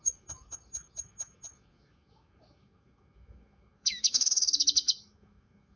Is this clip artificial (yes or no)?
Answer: yes